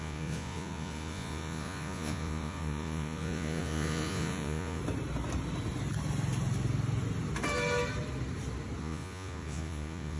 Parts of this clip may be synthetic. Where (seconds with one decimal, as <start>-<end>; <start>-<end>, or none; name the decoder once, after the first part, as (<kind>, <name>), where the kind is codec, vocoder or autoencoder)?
0.0-4.8 (vocoder, Vocos); 8.8-10.2